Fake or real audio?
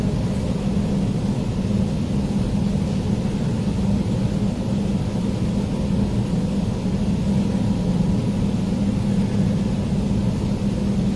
real